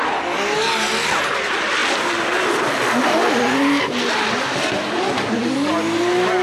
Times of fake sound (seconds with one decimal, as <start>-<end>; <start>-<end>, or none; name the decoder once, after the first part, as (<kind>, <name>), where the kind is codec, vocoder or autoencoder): none